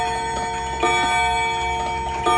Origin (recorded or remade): recorded